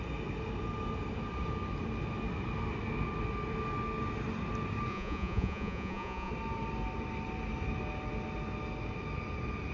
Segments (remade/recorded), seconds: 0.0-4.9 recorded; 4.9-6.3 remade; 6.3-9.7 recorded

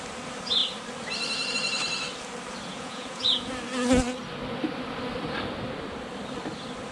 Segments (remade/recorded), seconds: 0.0-2.7 recorded; 2.7-3.5 remade; 3.5-6.9 recorded